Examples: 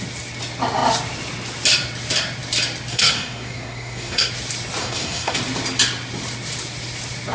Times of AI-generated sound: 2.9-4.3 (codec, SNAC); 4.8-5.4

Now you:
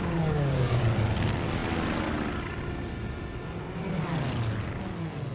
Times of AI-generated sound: 0.0-0.8 (codec, DAC)

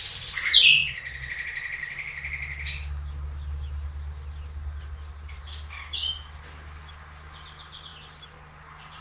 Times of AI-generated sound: none

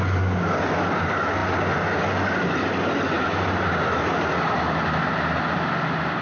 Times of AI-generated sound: none

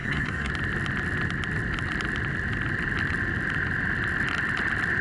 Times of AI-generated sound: 0.0-0.5 (codec, SNAC)

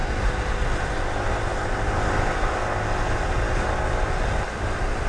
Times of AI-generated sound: none